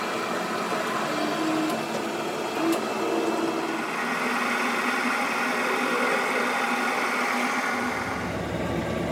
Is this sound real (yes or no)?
yes